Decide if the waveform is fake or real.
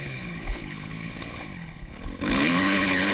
fake